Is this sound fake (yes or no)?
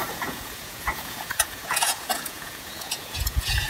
yes